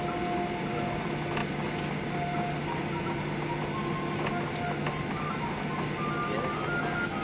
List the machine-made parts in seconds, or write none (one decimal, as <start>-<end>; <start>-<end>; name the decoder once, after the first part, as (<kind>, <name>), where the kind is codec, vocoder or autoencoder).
none